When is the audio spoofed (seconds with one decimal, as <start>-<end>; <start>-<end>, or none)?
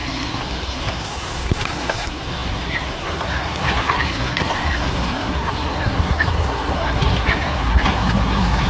0.0-8.7